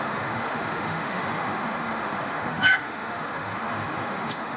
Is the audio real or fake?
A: fake